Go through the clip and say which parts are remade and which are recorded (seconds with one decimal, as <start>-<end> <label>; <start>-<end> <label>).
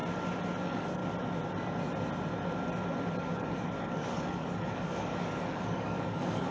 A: 0.0-0.6 recorded; 0.6-1.0 remade; 1.0-3.2 recorded; 3.2-6.5 remade